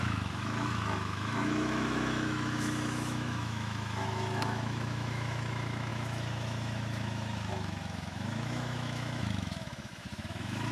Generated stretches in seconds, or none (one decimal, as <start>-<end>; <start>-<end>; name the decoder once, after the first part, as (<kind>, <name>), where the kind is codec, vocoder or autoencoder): 0.0-10.7 (autoencoder, DAC-VAE)